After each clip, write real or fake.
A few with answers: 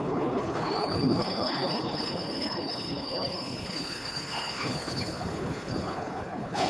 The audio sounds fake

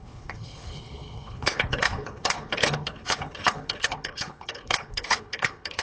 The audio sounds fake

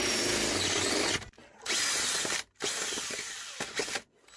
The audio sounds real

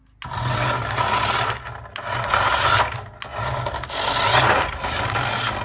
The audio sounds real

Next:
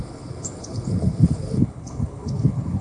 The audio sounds fake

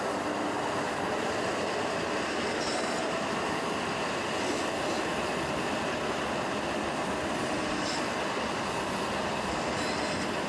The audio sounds real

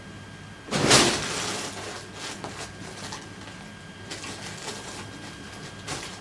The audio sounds real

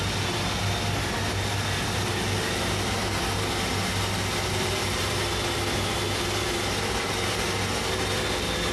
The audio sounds real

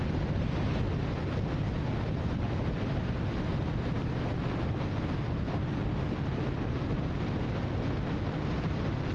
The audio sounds real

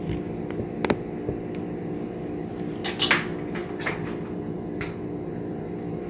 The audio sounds real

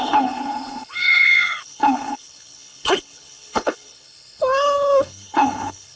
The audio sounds fake